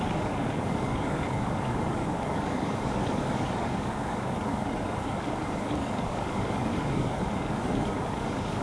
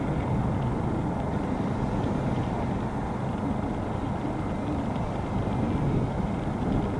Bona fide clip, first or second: second